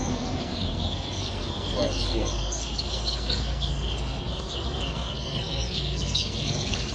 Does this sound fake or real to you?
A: fake